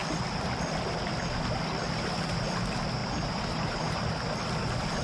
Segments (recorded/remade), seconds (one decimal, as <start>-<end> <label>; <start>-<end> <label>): 0.0-3.0 recorded; 3.0-4.4 remade; 4.4-5.0 recorded